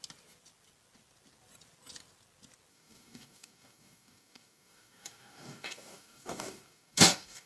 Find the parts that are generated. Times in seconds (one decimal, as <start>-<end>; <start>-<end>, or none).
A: 2.7-7.5